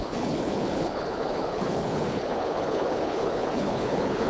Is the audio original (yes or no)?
no